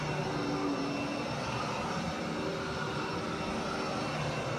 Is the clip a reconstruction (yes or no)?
no